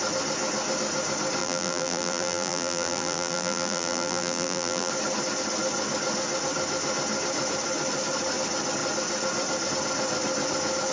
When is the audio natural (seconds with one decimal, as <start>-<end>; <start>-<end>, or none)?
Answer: 0.0-1.4; 4.9-10.9